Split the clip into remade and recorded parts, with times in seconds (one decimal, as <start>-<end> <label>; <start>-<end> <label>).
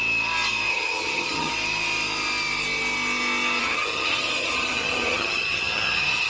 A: 0.0-0.7 recorded; 0.7-1.5 remade; 1.5-3.6 recorded; 3.6-6.3 remade